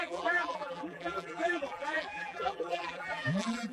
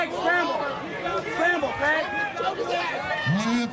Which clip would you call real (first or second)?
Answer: second